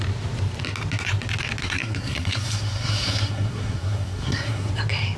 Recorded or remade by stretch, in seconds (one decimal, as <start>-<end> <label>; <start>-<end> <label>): 0.0-1.6 recorded; 1.6-4.7 remade; 4.7-5.2 recorded